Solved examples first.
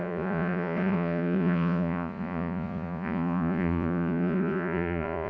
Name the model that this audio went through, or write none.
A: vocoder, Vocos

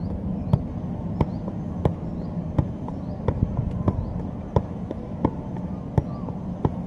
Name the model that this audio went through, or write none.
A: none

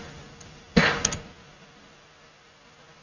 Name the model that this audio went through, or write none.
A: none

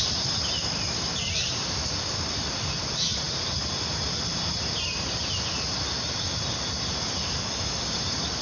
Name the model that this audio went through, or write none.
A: none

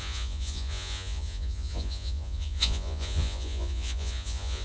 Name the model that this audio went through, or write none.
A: vocoder, Vocos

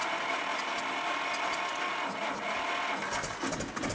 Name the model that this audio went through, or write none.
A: none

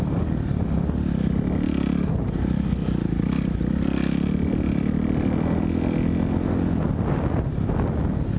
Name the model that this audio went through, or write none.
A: none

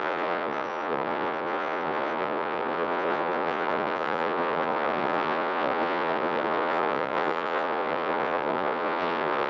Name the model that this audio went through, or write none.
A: vocoder, Vocos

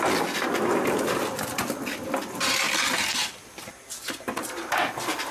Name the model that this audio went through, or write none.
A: none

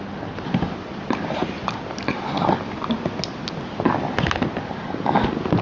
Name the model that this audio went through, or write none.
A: none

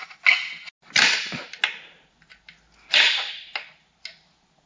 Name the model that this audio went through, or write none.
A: none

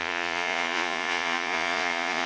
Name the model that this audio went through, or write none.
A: vocoder, Vocos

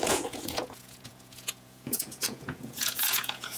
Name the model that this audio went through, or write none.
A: vocoder, Vocos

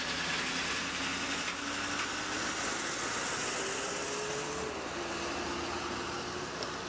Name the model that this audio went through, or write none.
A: none